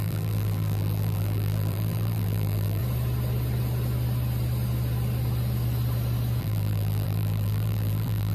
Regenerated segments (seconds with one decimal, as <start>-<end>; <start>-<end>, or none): 0.0-2.8; 6.4-8.3